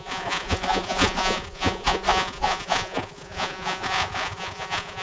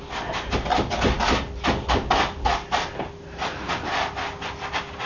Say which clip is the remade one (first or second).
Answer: first